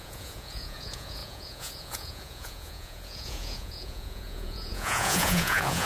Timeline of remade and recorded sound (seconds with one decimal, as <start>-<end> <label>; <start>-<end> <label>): 0.0-5.9 remade